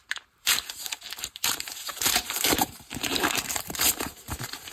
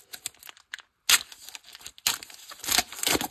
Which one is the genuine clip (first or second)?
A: second